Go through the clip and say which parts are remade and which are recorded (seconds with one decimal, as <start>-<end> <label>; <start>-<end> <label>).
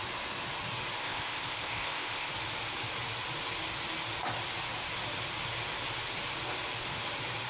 0.0-1.0 recorded; 1.0-2.3 remade; 2.3-7.5 recorded